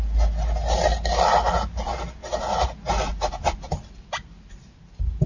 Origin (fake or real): real